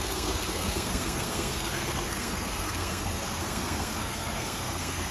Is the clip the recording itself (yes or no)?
no